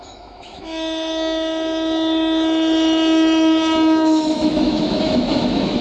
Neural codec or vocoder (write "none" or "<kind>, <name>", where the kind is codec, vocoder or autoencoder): autoencoder, DAC-VAE